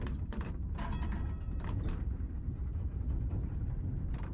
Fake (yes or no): yes